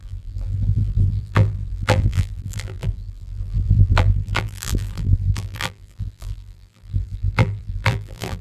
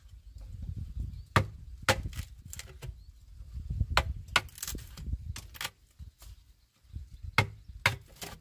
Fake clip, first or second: first